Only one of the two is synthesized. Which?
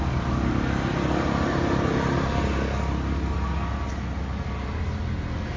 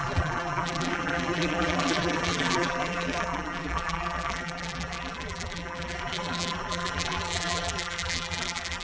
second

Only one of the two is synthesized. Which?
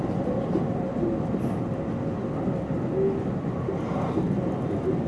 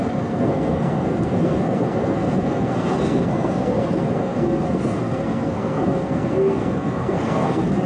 second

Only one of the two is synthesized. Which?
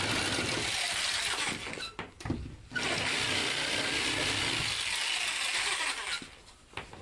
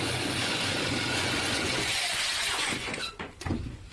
second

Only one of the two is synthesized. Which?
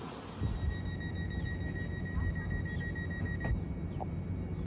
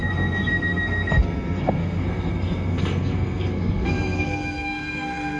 second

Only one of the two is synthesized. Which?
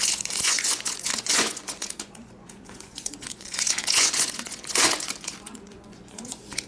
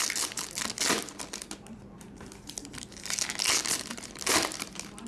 first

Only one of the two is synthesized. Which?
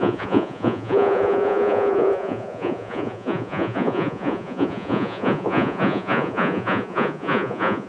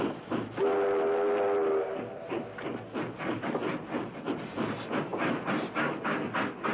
first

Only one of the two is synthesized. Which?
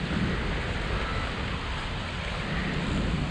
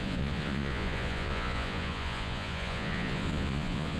second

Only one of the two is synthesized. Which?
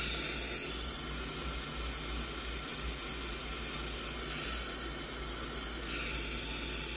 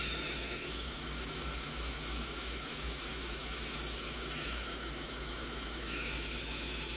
second